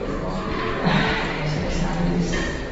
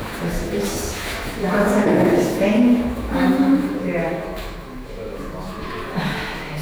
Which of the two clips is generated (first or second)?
second